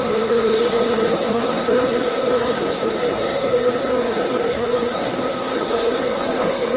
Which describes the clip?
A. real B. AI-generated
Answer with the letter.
B